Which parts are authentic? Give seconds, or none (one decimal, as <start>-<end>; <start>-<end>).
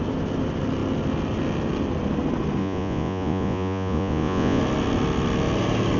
0.0-2.6; 4.6-6.0